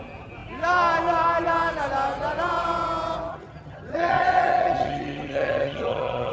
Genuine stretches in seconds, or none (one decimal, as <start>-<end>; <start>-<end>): 0.0-3.3

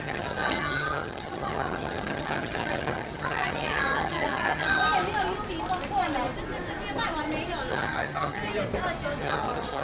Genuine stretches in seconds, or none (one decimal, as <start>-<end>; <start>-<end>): 4.8-7.7; 8.4-9.2

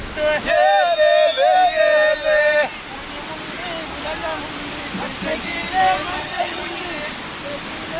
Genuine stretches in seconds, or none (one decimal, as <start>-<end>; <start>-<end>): 0.0-6.2; 6.8-8.0

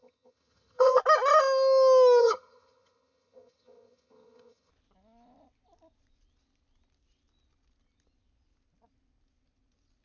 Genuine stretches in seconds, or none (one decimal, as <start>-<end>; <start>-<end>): 1.0-2.2; 4.7-10.0

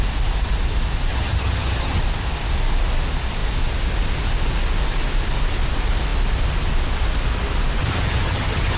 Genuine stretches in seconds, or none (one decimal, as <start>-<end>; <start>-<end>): 0.0-1.1; 2.0-7.8

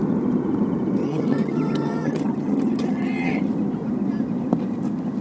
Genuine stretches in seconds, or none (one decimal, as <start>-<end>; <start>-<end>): 0.0-1.0; 3.4-5.2